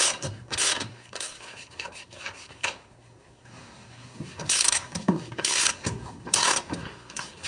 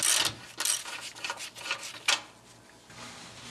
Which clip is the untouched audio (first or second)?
second